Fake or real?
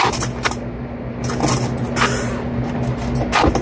real